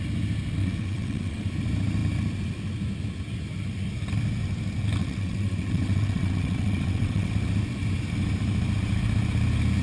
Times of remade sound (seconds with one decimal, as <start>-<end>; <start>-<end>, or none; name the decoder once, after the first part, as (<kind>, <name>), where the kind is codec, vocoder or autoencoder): 0.6-1.4 (vocoder, WaveNeXt); 5.0-7.3